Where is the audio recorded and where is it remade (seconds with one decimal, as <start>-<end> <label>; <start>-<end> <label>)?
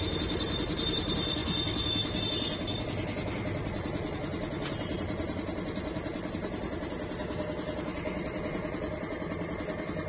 0.0-10.1 recorded